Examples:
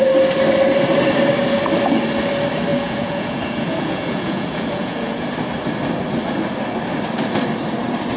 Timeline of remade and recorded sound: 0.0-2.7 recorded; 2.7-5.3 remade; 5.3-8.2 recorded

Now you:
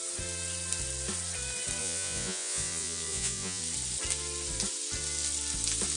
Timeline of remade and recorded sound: 0.0-1.8 recorded; 1.8-3.6 remade; 3.6-6.0 recorded